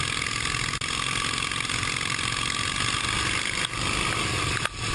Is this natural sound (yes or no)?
yes